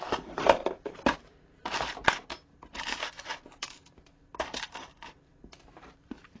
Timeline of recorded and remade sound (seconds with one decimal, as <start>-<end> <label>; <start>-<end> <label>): 0.0-6.4 remade